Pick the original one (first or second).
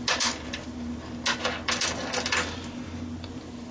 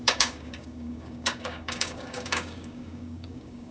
first